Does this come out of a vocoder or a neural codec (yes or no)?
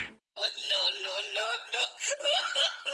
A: yes